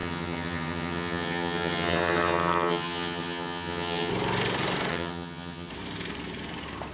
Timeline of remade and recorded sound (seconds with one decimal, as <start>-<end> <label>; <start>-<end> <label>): 0.0-4.1 remade; 4.1-4.9 recorded; 4.9-5.7 remade; 5.7-6.9 recorded